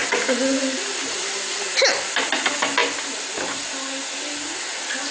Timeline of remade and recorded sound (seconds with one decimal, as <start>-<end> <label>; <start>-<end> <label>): 0.0-1.6 remade; 1.6-5.1 recorded